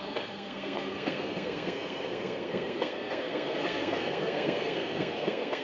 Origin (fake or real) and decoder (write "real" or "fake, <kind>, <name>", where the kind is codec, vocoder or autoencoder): fake, codec, SNAC